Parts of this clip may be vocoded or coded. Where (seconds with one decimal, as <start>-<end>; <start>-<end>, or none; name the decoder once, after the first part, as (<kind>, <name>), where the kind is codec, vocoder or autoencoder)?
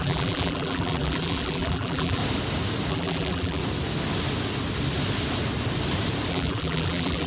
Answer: 0.0-2.2 (vocoder, BigVGAN v2); 2.9-3.6; 6.3-7.3